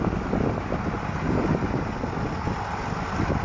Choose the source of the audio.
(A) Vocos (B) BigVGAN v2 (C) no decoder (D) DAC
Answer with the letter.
C